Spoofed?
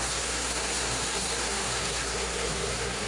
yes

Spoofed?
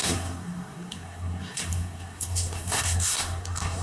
yes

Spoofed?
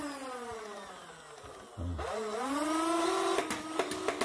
no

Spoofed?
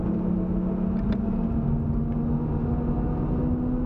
no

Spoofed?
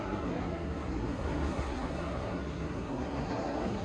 yes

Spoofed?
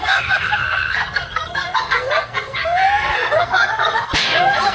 yes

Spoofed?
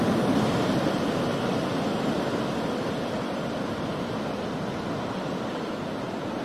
no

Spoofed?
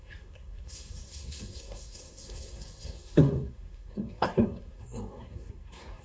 yes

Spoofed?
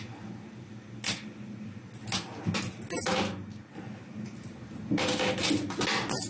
no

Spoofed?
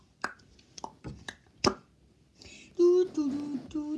no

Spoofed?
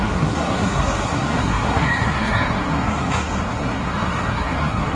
yes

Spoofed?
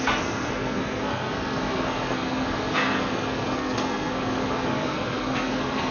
yes